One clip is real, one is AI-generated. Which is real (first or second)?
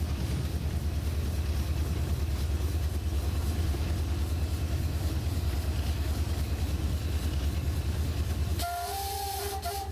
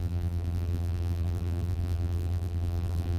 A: first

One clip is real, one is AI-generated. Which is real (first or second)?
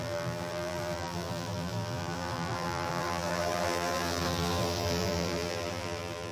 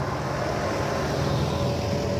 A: second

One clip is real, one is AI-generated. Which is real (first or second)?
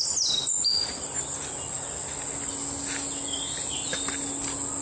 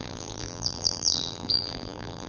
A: first